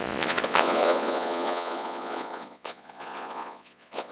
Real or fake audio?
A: fake